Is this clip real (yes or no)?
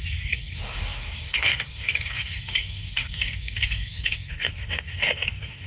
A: no